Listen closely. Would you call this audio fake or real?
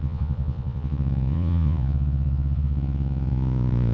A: fake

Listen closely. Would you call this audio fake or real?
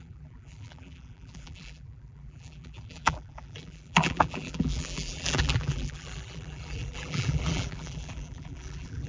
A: fake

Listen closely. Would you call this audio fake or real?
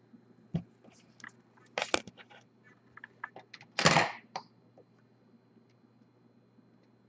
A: real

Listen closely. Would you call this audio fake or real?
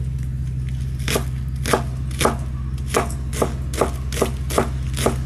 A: real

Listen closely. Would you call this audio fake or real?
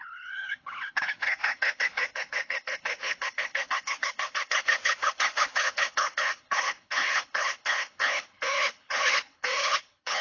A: fake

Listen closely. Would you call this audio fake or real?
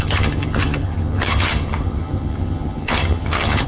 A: fake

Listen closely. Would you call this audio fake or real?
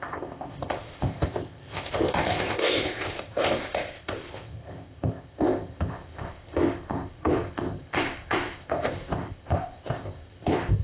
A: fake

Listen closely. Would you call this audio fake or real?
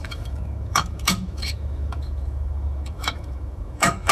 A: fake